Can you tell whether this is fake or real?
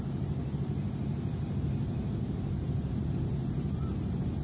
real